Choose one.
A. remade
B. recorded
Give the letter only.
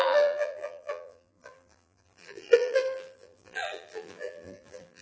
A